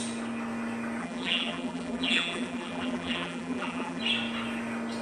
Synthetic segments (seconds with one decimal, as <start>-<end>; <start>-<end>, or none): 1.0-4.0